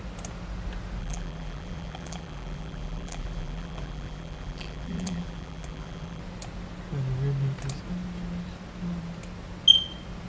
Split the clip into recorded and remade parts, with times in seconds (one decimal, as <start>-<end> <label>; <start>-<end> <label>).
0.0-1.0 recorded; 1.0-6.2 remade; 6.2-10.3 recorded